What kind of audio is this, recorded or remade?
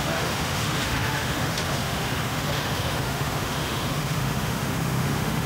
remade